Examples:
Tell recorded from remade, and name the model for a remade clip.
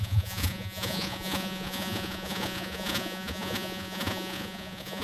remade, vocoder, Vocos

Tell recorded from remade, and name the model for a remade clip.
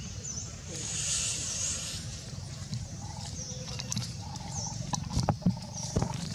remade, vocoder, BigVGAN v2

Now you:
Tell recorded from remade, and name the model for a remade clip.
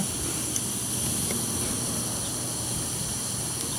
recorded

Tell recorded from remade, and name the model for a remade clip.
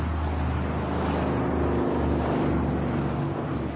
recorded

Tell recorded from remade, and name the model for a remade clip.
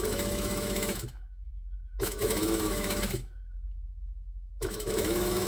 remade, autoencoder, DAC-VAE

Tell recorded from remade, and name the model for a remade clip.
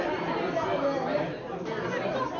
recorded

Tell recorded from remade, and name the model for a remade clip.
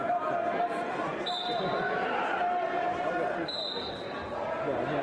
recorded